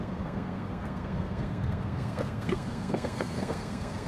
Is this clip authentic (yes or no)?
no